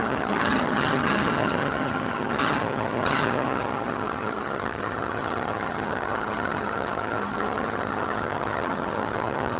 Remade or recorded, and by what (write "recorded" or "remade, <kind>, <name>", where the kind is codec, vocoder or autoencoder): remade, vocoder, HiFi-GAN